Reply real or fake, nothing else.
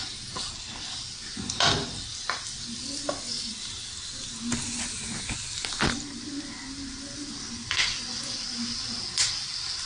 real